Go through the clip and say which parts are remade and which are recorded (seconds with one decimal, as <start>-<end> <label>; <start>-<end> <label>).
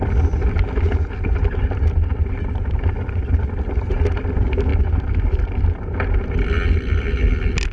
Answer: 0.0-7.7 recorded